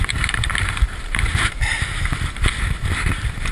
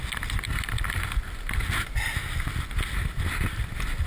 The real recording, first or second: second